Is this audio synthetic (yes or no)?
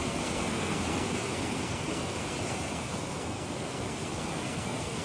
yes